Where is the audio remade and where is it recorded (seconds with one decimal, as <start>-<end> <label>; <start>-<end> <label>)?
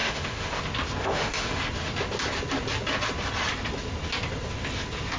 0.0-0.6 remade; 0.6-1.0 recorded; 1.0-1.6 remade; 1.6-5.2 recorded